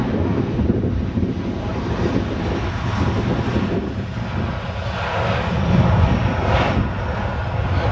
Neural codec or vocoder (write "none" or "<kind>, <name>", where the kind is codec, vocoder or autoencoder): none